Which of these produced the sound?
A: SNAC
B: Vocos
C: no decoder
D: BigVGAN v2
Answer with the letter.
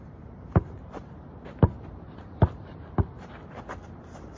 D